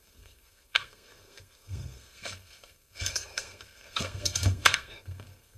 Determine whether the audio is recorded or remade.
remade